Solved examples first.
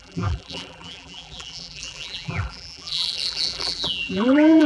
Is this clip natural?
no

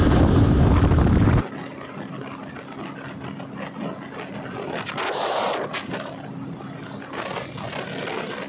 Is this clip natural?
yes